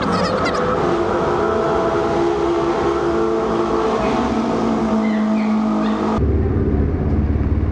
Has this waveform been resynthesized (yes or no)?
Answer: no